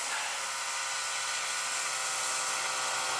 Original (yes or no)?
yes